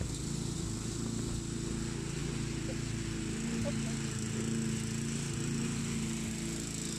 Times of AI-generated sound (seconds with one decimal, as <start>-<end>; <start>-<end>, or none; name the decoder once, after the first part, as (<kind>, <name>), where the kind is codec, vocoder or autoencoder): none